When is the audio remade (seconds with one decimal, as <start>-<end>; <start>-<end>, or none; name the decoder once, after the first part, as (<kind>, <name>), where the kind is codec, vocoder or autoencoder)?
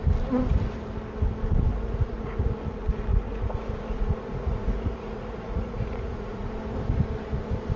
1.7-2.5 (vocoder, Vocos); 3.1-6.5